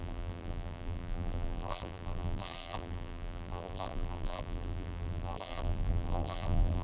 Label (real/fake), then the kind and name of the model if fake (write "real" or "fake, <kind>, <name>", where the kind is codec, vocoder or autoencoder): fake, vocoder, BigVGAN v2